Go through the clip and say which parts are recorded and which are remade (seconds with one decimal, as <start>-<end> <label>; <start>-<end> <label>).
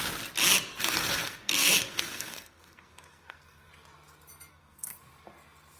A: 0.0-0.7 recorded; 0.7-3.7 remade; 3.7-4.5 recorded; 4.5-5.0 remade; 5.0-5.8 recorded